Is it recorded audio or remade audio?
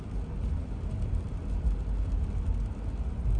recorded